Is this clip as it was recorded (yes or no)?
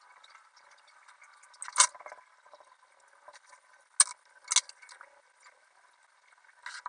yes